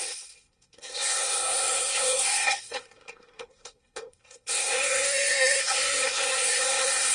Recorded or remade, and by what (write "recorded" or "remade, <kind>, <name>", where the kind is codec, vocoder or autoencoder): remade, codec, SNAC